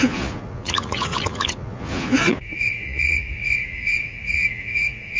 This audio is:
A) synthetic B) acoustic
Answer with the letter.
A